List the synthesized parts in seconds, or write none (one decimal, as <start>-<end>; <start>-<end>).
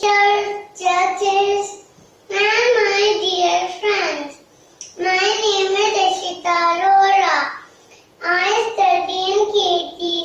7.1-10.2